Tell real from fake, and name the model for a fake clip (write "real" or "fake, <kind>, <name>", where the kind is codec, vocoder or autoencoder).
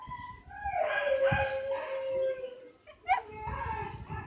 real